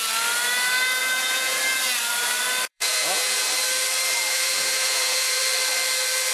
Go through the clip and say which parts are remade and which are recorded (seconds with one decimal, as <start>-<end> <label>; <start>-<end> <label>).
0.0-1.0 recorded; 1.0-1.6 remade; 1.6-2.7 recorded; 2.7-3.4 remade; 3.4-4.3 recorded; 4.3-5.4 remade; 5.4-6.3 recorded